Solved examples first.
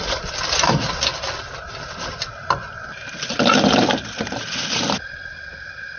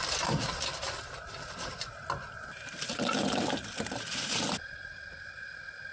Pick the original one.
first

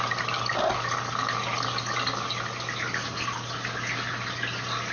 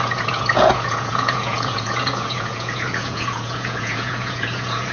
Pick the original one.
first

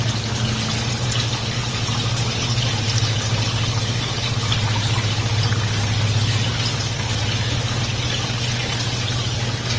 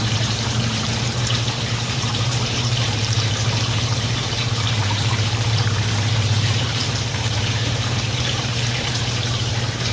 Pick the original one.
first